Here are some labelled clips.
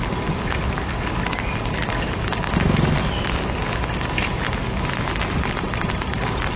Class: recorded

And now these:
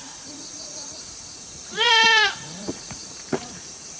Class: remade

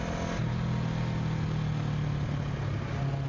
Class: recorded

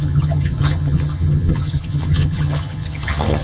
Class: remade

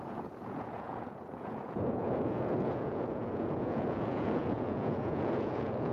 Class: remade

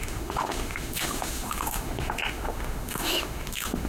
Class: remade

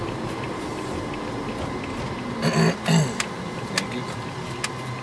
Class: recorded